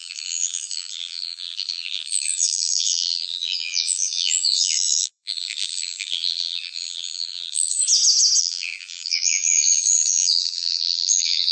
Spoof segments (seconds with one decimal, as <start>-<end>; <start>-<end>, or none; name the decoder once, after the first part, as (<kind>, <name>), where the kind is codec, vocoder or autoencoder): 0.0-7.8 (vocoder, BigVGAN v2); 8.4-11.5